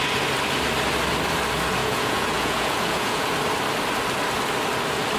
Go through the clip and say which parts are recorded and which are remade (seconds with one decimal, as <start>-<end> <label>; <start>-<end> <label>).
0.0-1.8 recorded; 1.8-3.3 remade; 3.3-5.2 recorded